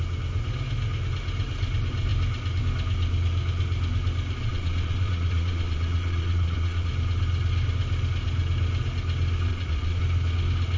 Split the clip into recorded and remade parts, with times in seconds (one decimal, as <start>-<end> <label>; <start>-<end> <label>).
0.0-4.4 recorded; 4.4-6.9 remade; 6.9-9.5 recorded; 9.5-10.0 remade; 10.0-10.8 recorded